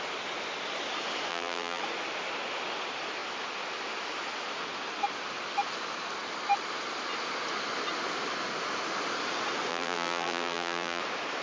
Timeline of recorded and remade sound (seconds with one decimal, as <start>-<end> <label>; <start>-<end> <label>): 0.0-1.3 recorded; 1.3-1.8 remade; 1.8-9.7 recorded; 9.7-11.0 remade; 11.0-11.4 recorded